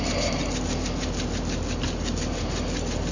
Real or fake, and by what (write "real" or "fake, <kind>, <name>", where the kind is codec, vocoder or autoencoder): real